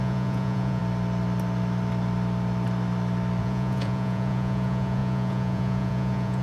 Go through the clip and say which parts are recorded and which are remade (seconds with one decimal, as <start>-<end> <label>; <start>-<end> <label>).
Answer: 0.0-0.8 remade; 0.8-3.4 recorded; 3.4-6.4 remade